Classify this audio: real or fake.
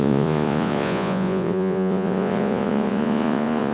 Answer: fake